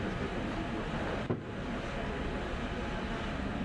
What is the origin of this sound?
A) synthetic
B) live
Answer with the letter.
B